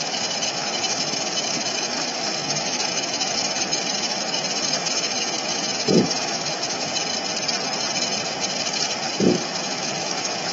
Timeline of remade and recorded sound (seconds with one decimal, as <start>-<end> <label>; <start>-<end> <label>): 0.0-6.9 remade; 6.9-9.2 recorded; 9.2-10.5 remade